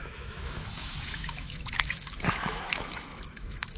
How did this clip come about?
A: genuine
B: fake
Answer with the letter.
B